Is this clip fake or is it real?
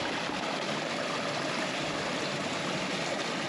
real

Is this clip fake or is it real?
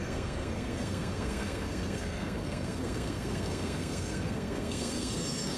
fake